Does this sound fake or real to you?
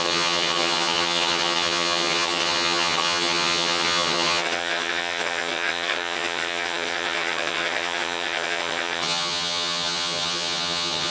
fake